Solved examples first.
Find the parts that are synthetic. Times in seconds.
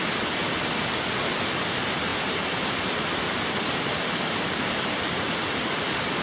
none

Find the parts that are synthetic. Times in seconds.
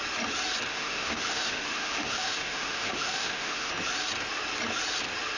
0.7-3.7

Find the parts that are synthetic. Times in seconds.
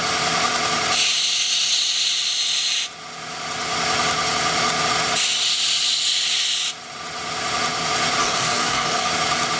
8.2-9.1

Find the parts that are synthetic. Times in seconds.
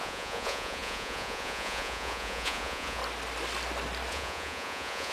0.0-3.0; 4.1-5.1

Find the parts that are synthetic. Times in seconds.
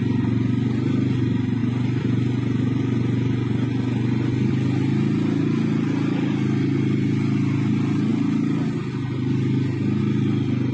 none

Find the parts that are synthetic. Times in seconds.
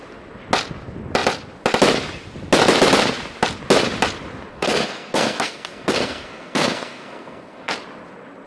4.5-7.7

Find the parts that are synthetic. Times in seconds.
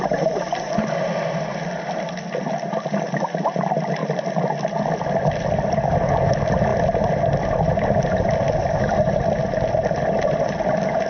none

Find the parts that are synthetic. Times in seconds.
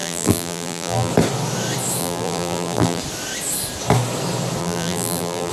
0.0-1.1; 2.0-3.0; 4.6-5.5